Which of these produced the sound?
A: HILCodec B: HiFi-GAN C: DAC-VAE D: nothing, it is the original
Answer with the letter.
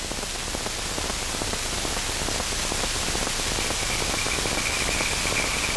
D